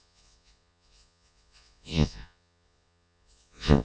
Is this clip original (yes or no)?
no